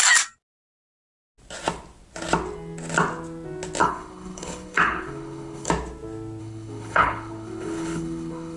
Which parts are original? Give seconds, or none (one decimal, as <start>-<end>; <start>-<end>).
0.0-3.8; 5.7-6.4